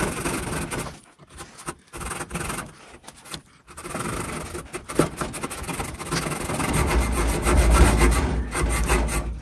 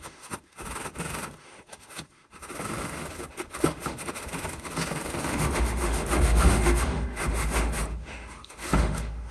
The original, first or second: first